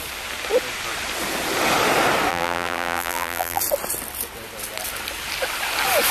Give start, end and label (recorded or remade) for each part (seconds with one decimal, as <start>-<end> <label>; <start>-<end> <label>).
0.0-2.3 recorded; 2.3-3.6 remade; 3.6-6.1 recorded